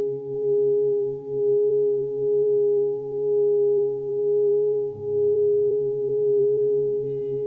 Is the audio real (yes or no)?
no